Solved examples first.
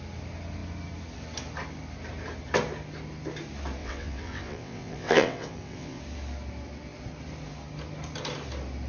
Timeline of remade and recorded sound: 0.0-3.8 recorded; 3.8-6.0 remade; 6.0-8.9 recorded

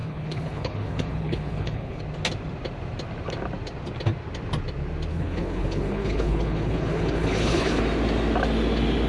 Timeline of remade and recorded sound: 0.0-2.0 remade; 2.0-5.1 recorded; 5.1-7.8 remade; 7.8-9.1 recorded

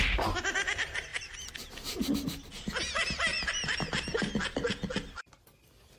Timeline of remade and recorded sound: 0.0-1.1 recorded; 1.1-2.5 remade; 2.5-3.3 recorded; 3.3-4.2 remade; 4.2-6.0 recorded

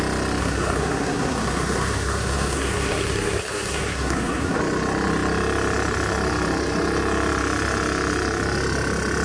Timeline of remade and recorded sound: 0.0-0.4 recorded; 0.4-4.6 remade; 4.6-9.2 recorded

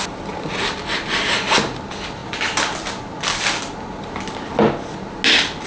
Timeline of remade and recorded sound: 0.0-5.7 recorded